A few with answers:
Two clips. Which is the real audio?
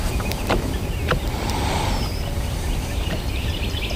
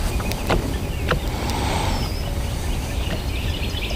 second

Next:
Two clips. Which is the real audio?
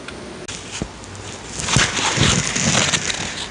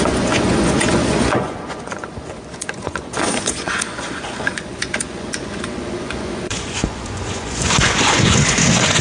first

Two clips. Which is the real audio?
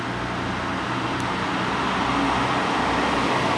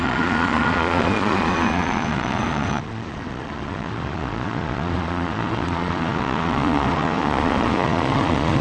first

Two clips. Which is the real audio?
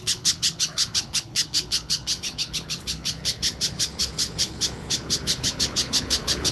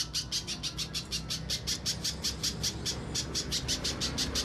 second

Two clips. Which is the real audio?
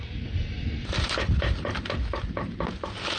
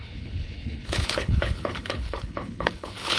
first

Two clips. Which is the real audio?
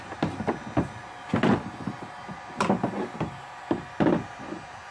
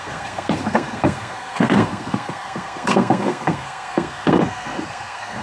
first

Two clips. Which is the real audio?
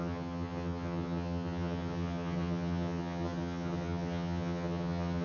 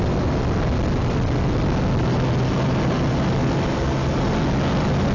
second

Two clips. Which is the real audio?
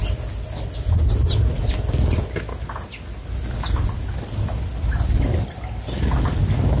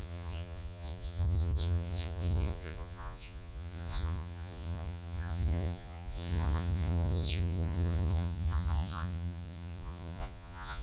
first